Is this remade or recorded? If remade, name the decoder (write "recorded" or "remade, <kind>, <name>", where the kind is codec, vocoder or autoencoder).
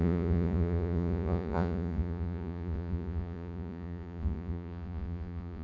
remade, vocoder, Vocos